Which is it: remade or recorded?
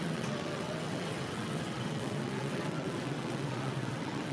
remade